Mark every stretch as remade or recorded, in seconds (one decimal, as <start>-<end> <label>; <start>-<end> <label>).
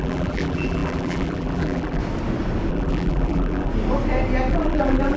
0.0-2.0 remade; 2.0-2.7 recorded; 2.7-3.7 remade; 3.7-4.5 recorded; 4.5-5.2 remade